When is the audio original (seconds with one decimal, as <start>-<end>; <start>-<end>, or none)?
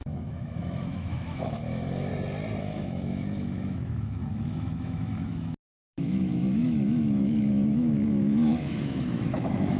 2.1-2.6